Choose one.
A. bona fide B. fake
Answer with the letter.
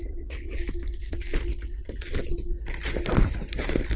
A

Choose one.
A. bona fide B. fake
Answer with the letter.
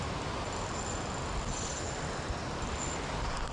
A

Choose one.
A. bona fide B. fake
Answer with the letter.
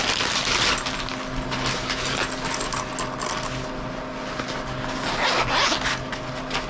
A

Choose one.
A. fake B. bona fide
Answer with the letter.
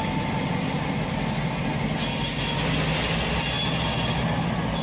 B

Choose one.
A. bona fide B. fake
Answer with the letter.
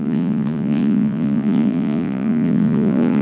B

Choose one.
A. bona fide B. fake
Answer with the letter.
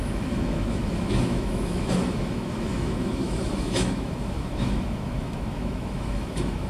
B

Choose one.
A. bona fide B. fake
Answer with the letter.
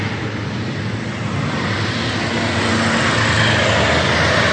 A